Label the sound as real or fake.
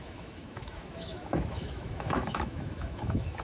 fake